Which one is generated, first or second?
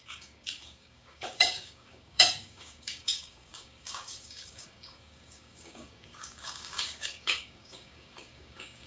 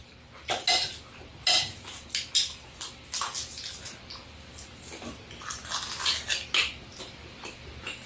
first